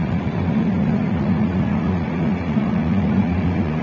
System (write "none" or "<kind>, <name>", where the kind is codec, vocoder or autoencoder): vocoder, Vocos